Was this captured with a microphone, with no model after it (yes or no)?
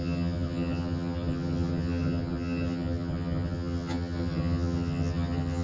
no